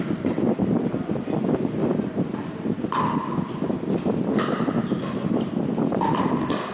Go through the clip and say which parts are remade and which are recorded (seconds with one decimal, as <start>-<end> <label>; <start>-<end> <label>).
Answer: 0.0-6.7 recorded